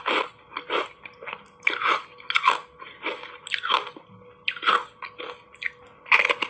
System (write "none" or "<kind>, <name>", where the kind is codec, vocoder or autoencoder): none